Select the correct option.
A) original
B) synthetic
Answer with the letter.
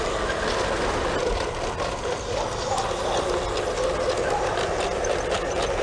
A